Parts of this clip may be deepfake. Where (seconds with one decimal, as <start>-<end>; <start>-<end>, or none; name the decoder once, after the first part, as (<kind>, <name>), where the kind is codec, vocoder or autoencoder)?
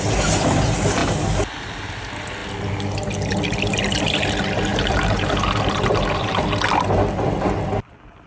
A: 4.7-6.4 (vocoder, BigVGAN v2)